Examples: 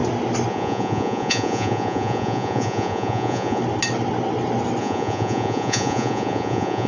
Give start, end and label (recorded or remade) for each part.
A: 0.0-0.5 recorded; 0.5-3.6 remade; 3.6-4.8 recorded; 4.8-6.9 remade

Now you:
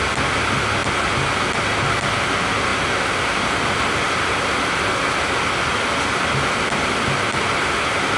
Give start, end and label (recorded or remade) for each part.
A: 0.0-8.2 recorded

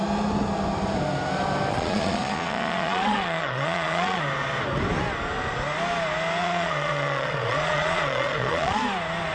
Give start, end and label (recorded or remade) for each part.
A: 0.0-1.7 recorded; 1.7-4.2 remade; 4.2-6.4 recorded; 6.4-8.8 remade; 8.8-9.3 recorded

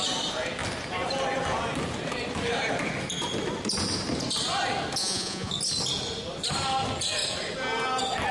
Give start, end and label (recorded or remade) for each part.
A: 0.0-5.0 recorded; 5.0-5.5 remade; 5.5-8.3 recorded

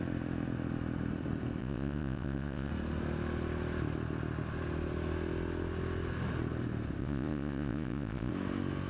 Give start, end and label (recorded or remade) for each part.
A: 0.0-1.6 recorded; 1.6-2.7 remade; 2.7-7.0 recorded; 7.0-8.3 remade; 8.3-8.9 recorded

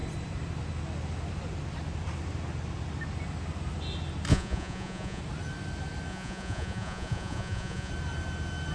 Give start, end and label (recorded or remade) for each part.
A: 0.0-4.3 recorded; 4.3-5.2 remade; 5.2-6.1 recorded; 6.1-7.9 remade; 7.9-8.7 recorded